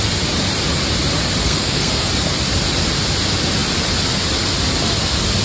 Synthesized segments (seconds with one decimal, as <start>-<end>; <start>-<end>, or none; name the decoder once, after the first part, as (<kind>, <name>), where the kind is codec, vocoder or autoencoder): 1.4-2.1 (codec, SNAC)